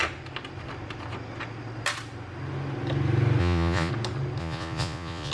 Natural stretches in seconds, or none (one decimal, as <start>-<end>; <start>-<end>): 0.0-3.4; 3.9-4.4